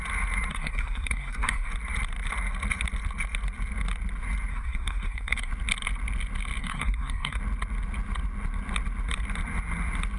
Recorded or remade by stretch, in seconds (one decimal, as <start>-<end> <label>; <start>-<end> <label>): 0.0-0.5 recorded; 0.5-1.7 remade; 1.7-4.5 recorded; 4.5-5.5 remade; 5.5-6.6 recorded; 6.6-7.4 remade; 7.4-10.2 recorded